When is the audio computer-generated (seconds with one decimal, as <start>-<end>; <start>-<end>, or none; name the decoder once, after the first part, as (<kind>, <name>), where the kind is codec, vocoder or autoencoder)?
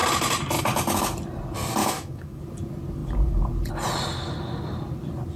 1.8-2.4 (autoencoder, DAC-VAE)